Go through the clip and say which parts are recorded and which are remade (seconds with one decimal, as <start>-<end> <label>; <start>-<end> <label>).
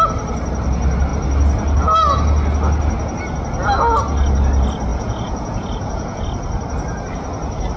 0.0-4.9 recorded; 4.9-6.2 remade; 6.2-7.8 recorded